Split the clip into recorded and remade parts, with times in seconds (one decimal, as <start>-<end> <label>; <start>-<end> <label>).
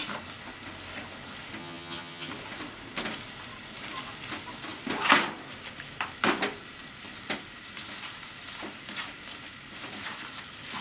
0.0-1.6 recorded; 1.6-2.3 remade; 2.3-10.8 recorded